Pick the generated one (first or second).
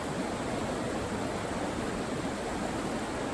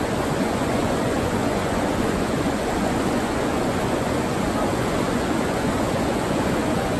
second